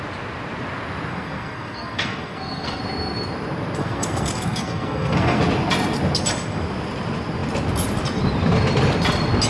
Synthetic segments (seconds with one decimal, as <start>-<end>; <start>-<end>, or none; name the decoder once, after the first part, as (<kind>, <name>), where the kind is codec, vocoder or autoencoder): 1.1-2.8 (codec, SNAC); 3.8-5.4